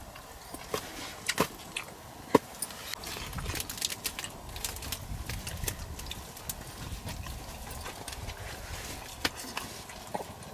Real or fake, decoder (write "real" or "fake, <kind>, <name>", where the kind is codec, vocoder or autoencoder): real